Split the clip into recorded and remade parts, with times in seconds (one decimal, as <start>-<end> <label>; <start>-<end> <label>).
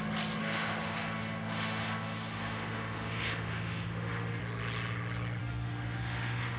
0.0-0.4 recorded; 0.4-4.4 remade; 4.4-5.4 recorded; 5.4-6.6 remade